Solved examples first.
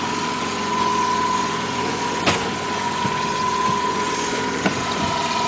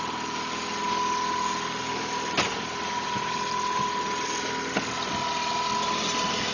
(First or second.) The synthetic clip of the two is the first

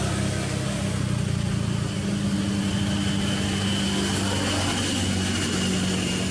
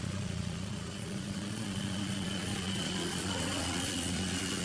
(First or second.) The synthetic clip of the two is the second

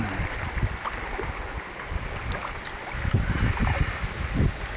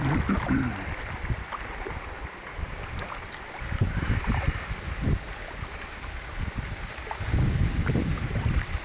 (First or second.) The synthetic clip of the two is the second